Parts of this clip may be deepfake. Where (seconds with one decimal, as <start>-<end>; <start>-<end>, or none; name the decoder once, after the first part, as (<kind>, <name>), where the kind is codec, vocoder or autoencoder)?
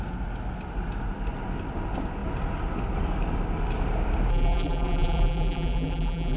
4.3-6.4 (vocoder, BigVGAN v2)